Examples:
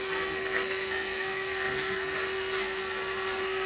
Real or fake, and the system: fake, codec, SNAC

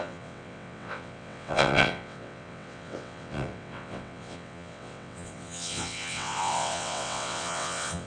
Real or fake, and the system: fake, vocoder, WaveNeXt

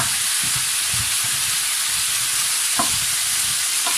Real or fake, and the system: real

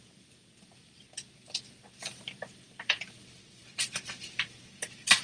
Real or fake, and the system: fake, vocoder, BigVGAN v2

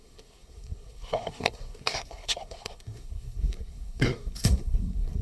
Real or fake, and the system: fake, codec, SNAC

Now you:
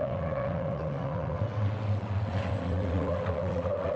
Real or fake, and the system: fake, vocoder, WaveNeXt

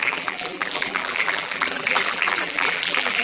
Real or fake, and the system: fake, vocoder, BigVGAN v2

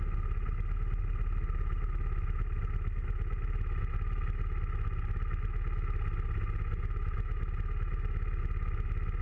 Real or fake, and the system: real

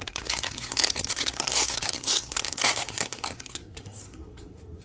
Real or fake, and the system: fake, codec, SNAC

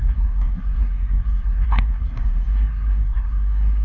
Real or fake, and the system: fake, codec, SNAC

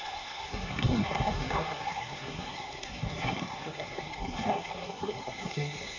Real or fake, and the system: fake, codec, SNAC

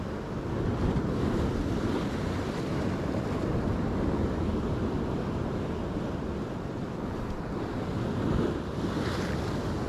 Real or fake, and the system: real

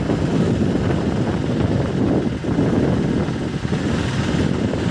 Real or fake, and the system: real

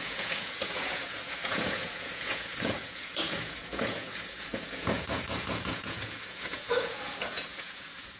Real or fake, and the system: fake, vocoder, Vocos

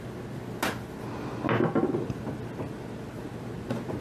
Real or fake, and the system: real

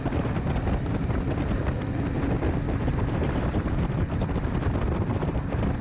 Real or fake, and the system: real